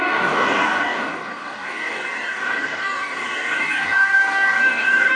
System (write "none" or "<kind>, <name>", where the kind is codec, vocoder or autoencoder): codec, DAC